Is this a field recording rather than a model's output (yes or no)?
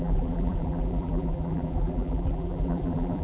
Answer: no